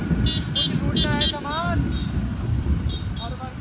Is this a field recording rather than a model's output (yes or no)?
yes